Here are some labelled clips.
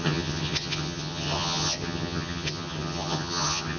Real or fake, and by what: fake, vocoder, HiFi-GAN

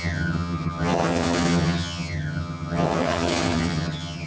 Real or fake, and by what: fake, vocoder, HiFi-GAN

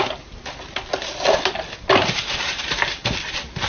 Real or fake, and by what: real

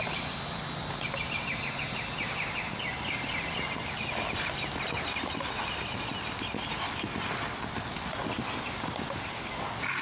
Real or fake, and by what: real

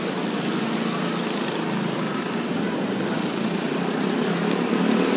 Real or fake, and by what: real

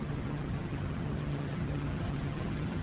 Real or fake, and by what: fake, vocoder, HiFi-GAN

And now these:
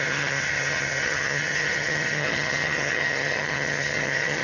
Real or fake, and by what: fake, vocoder, HiFi-GAN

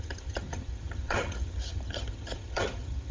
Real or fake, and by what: fake, vocoder, HiFi-GAN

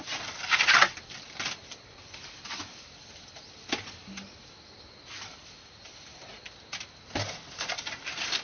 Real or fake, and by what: real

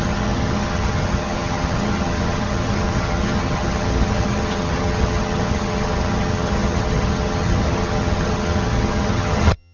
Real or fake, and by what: fake, vocoder, HiFi-GAN